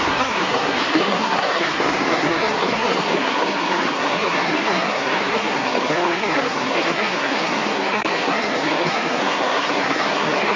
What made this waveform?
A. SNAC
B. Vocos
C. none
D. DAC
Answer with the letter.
A